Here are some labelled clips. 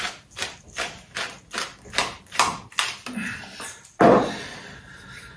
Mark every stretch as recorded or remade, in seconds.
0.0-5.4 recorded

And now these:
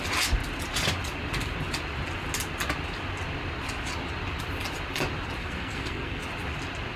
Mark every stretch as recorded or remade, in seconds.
0.0-5.4 recorded; 5.4-6.2 remade; 6.2-7.0 recorded

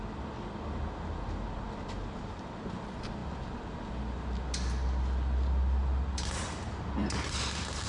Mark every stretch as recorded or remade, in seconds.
0.0-7.9 recorded

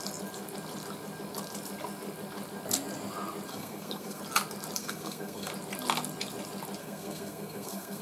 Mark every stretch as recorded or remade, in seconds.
0.0-3.5 recorded; 3.5-4.2 remade; 4.2-4.8 recorded; 4.8-5.5 remade; 5.5-6.8 recorded; 6.8-8.0 remade

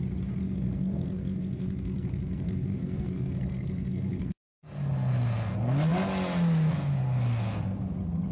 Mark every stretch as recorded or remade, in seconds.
0.0-0.4 recorded; 0.4-4.6 remade; 4.6-8.3 recorded

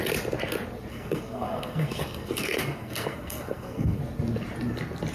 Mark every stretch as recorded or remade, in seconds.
0.0-0.9 recorded; 0.9-4.0 remade; 4.0-5.1 recorded